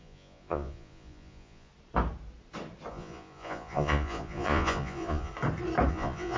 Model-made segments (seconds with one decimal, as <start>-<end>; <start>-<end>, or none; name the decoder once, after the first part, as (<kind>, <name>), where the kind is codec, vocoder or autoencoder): 0.0-1.7 (vocoder, Vocos); 2.9-5.3; 5.9-6.4